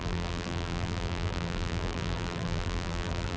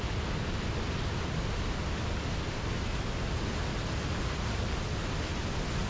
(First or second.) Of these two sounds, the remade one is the first